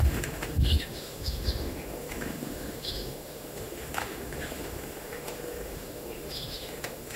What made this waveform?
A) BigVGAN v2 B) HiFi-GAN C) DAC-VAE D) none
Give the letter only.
C